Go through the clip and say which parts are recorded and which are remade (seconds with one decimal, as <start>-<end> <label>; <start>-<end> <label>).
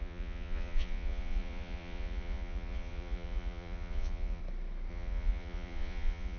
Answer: 0.0-4.4 remade; 4.4-4.9 recorded; 4.9-6.4 remade